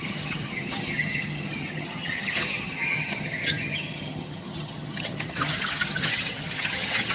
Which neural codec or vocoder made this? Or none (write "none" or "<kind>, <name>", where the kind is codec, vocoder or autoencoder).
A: vocoder, HiFi-GAN